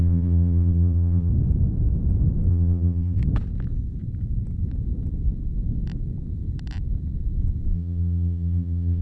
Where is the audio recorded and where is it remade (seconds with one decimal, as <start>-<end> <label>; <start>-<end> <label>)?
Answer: 0.0-1.3 remade; 1.3-2.5 recorded; 2.5-3.2 remade; 3.2-7.7 recorded; 7.7-9.0 remade